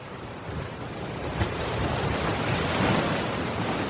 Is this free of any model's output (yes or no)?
no